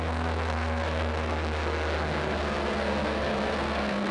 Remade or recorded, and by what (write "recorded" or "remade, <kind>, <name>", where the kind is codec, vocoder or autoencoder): remade, codec, SNAC